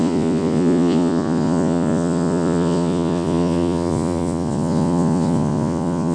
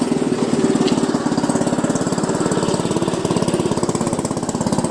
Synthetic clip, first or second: first